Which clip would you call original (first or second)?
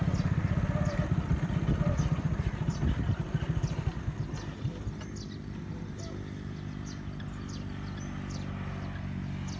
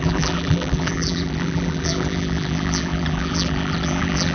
first